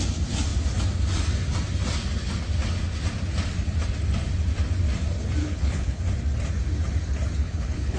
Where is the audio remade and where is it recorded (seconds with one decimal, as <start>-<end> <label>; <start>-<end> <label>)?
0.0-5.4 recorded; 5.4-6.0 remade; 6.0-7.4 recorded; 7.4-8.0 remade